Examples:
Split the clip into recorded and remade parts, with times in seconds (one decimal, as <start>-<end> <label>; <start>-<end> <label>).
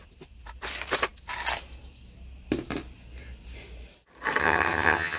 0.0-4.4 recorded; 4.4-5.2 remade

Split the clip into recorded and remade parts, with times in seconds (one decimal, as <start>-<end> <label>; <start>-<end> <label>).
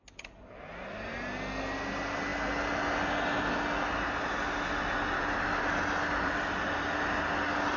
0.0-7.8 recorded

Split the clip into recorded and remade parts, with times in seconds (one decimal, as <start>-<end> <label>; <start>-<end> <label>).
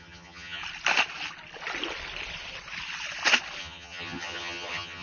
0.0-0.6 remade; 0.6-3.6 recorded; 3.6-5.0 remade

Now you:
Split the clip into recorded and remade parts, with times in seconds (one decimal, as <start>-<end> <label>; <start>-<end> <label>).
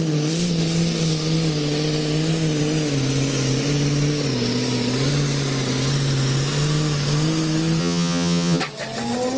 0.0-7.8 recorded; 7.8-8.6 remade; 8.6-9.4 recorded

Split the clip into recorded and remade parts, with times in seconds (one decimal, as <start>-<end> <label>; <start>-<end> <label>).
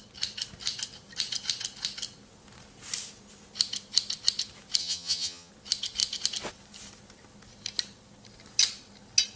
0.0-4.8 recorded; 4.8-5.5 remade; 5.5-9.4 recorded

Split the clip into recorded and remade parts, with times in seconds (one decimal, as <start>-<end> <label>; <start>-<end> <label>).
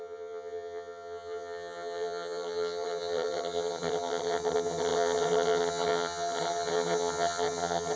0.0-8.0 remade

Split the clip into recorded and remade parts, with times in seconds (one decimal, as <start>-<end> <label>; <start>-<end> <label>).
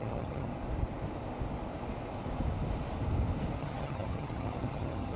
0.0-0.5 remade; 0.5-3.6 recorded; 3.6-5.2 remade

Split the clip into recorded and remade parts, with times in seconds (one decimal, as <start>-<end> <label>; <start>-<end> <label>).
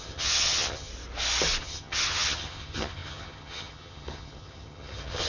0.0-0.9 remade; 0.9-1.6 recorded; 1.6-5.3 remade